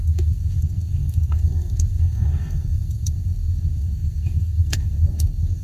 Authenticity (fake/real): fake